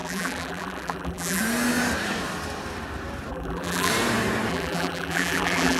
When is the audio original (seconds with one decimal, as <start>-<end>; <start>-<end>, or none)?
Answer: 1.4-3.3; 3.9-4.5